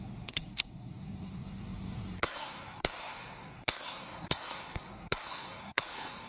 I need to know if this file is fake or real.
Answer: fake